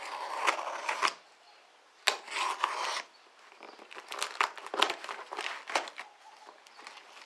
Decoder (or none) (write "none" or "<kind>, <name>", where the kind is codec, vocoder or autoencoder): none